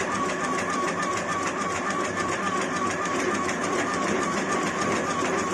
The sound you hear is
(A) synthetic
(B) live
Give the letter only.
A